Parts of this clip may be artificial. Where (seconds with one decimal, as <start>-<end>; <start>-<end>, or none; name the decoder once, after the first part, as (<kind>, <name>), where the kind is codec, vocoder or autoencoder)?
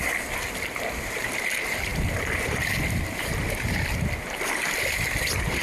none